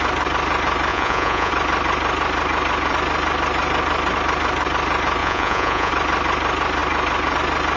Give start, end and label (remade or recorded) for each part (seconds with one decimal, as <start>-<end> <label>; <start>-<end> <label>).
0.0-0.9 recorded; 0.9-1.5 remade; 1.5-5.2 recorded; 5.2-5.9 remade; 5.9-7.8 recorded